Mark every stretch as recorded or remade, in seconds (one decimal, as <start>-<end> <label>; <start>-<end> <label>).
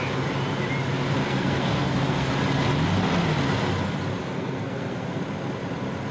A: 0.0-1.2 recorded; 1.2-2.3 remade; 2.3-4.2 recorded; 4.2-5.2 remade; 5.2-6.1 recorded